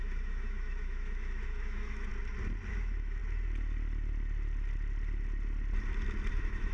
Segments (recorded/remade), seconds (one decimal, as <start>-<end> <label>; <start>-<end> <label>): 0.0-2.1 remade; 2.1-2.7 recorded; 2.7-3.2 remade; 3.2-6.3 recorded; 6.3-6.7 remade